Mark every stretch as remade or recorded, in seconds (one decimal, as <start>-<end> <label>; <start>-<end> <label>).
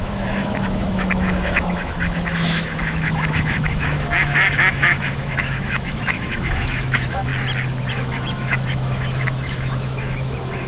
0.0-7.3 remade; 7.3-7.9 recorded; 7.9-10.7 remade